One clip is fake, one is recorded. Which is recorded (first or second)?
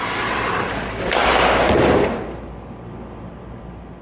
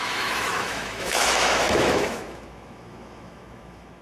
first